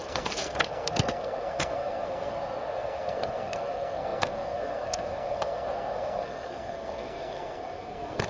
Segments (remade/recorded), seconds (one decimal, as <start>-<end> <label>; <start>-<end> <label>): 0.0-8.3 remade